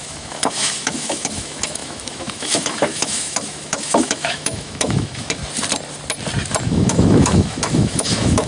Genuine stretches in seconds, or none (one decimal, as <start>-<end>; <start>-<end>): 5.4-6.6